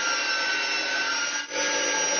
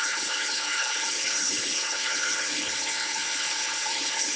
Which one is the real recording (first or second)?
first